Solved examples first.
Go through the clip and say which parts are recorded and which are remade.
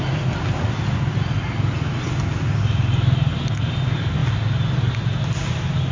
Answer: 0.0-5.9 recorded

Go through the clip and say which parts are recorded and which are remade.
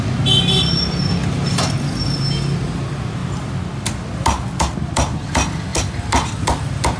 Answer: 0.0-7.0 recorded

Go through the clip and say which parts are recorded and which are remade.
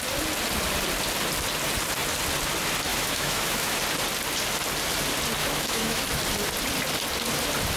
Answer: 0.0-2.9 recorded; 2.9-3.8 remade; 3.8-5.4 recorded; 5.4-6.0 remade; 6.0-7.8 recorded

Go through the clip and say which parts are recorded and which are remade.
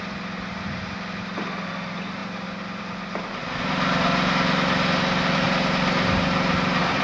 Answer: 0.0-7.0 recorded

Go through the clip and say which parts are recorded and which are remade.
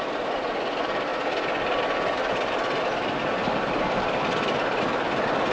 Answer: 0.0-5.5 recorded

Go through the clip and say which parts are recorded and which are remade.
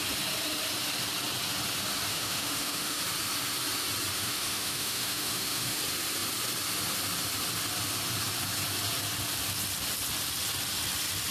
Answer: 0.0-2.1 recorded; 2.1-3.0 remade; 3.0-4.1 recorded; 4.1-5.8 remade; 5.8-11.3 recorded